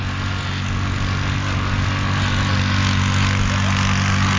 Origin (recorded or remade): recorded